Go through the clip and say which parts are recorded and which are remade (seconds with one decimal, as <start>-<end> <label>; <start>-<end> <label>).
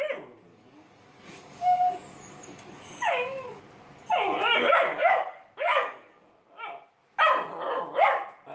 0.0-0.5 recorded; 0.5-3.6 remade; 3.6-4.9 recorded; 4.9-6.3 remade; 6.3-8.5 recorded